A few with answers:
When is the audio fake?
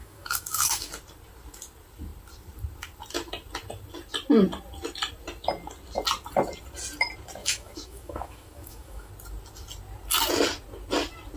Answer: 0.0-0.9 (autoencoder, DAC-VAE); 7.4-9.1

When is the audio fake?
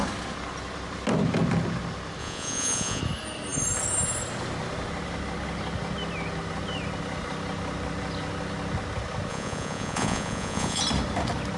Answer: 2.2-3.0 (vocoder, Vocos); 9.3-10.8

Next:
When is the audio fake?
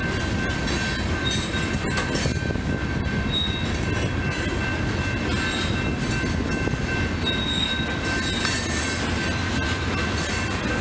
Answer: none